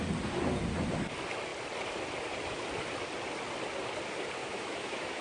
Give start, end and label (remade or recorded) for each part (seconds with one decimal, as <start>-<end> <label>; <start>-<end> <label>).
0.0-4.4 recorded; 4.4-5.2 remade